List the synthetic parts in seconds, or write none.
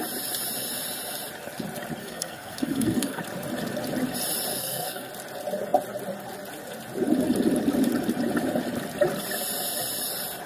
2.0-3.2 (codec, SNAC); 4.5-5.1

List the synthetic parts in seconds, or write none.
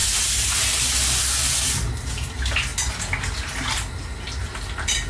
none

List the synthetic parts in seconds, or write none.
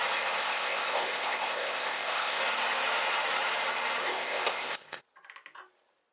0.4-2.4 (codec, ZipCodec); 4.0-5.0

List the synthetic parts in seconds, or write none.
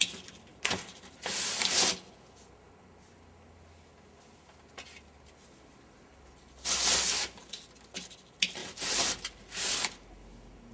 0.5-1.4 (vocoder, BigVGAN v2)